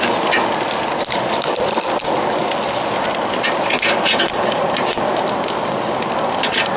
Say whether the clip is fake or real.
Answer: real